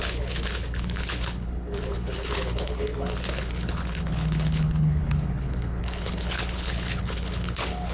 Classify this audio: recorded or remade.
remade